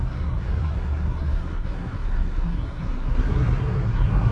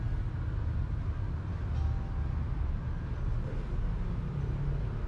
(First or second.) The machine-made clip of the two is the first